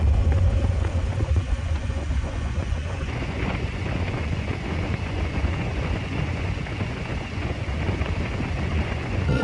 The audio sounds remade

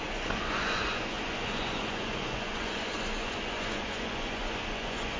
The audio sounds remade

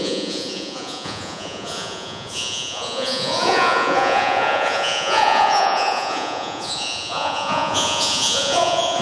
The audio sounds remade